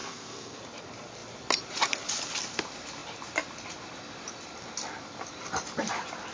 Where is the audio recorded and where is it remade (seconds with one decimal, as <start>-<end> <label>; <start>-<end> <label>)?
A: 0.0-0.6 remade; 0.6-6.3 recorded